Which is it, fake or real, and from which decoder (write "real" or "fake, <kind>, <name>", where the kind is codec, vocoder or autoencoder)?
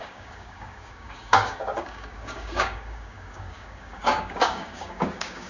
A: fake, codec, DAC